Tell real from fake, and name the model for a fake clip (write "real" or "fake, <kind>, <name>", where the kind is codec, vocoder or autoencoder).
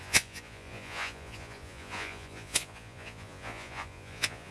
fake, vocoder, Vocos